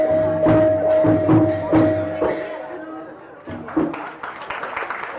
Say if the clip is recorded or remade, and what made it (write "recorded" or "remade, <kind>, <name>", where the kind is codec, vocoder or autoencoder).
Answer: recorded